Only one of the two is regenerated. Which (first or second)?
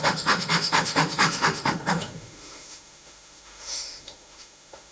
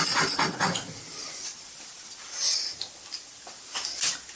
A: first